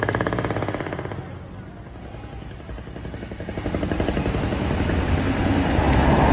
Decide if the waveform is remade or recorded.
recorded